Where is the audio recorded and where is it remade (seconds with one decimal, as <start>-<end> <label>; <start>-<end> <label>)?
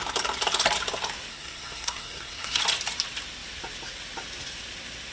0.0-1.3 recorded; 1.3-2.6 remade; 2.6-5.1 recorded